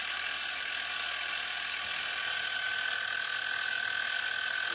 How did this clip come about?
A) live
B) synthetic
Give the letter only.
A